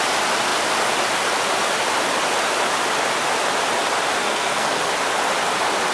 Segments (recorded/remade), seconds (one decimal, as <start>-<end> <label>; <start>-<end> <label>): 0.0-4.2 recorded; 4.2-4.9 remade; 4.9-5.9 recorded